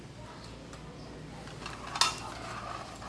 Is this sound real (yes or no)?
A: yes